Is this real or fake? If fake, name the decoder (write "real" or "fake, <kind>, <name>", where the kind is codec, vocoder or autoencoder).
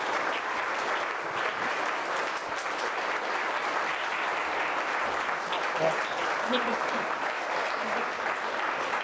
real